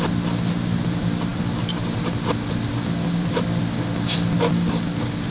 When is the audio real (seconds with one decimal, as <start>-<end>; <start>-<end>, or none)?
0.0-5.3